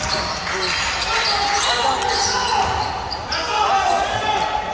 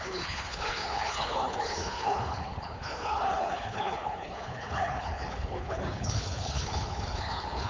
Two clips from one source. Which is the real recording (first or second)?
first